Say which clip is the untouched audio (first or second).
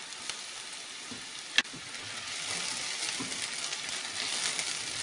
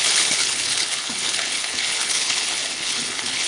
first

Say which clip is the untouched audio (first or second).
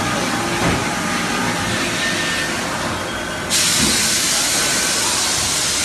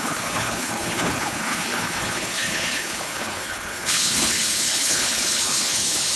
first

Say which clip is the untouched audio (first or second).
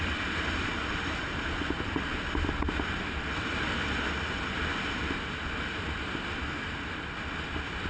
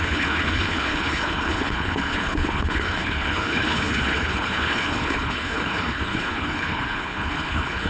first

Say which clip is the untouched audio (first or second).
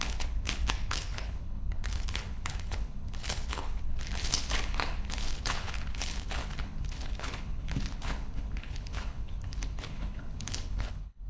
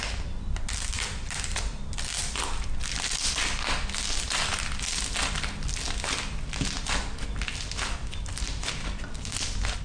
second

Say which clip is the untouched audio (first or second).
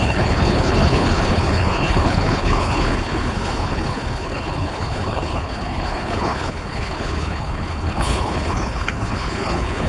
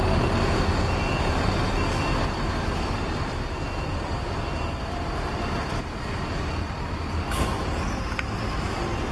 second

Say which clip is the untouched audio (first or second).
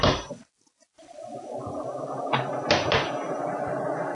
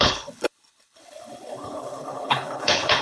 first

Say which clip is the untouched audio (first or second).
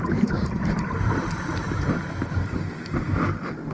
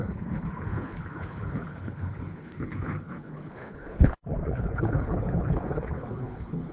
first